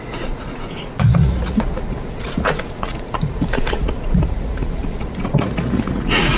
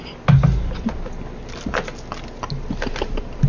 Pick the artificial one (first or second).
first